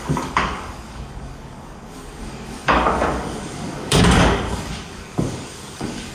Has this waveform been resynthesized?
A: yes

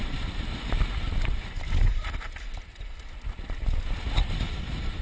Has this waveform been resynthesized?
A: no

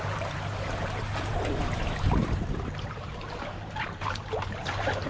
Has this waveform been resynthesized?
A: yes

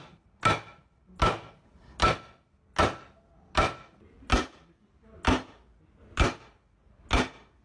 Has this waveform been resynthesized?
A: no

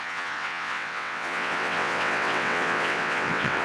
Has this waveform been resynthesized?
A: yes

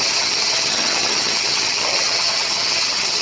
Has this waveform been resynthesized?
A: yes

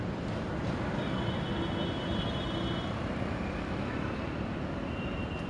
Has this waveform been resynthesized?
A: no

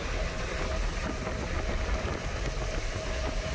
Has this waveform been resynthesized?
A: no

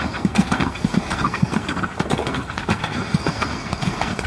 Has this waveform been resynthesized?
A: yes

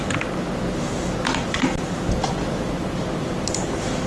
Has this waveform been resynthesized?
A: no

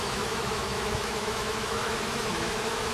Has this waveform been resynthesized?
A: yes